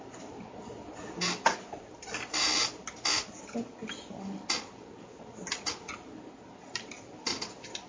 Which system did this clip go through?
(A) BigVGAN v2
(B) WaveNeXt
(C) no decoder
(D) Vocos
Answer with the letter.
C